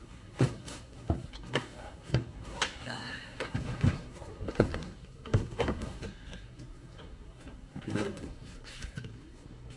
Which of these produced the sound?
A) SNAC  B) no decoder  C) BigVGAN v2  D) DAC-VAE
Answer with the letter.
A